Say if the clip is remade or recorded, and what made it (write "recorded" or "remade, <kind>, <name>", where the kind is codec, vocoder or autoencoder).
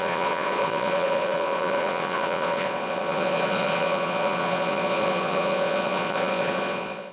remade, vocoder, Vocos